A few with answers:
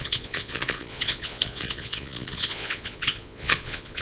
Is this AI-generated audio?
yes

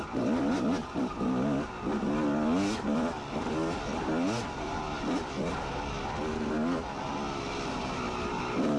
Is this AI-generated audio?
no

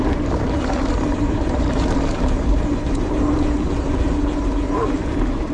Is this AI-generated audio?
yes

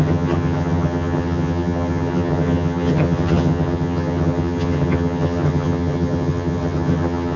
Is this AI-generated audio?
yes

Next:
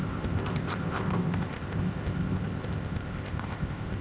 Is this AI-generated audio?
yes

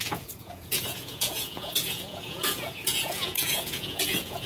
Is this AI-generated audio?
yes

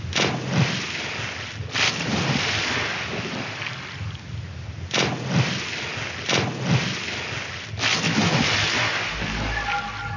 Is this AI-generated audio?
no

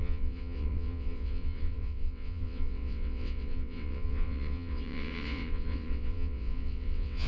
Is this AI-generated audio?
yes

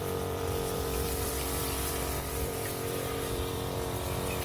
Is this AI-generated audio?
yes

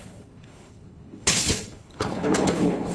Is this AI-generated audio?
yes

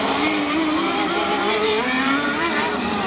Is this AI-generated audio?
yes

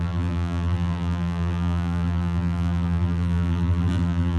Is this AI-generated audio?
yes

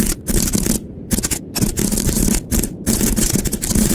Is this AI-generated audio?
yes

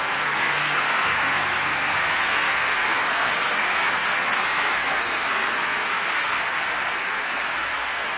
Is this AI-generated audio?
yes